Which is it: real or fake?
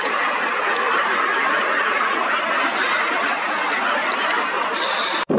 real